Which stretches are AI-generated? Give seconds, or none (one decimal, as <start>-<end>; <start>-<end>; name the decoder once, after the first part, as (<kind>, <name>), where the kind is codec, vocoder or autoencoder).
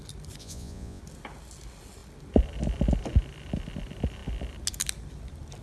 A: 0.4-1.0 (vocoder, Vocos)